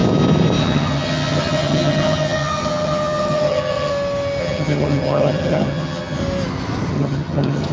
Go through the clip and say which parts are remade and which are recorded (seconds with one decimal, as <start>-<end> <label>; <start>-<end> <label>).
0.0-0.6 recorded; 0.6-3.9 remade; 3.9-4.4 recorded; 4.4-6.2 remade; 6.2-6.9 recorded; 6.9-7.7 remade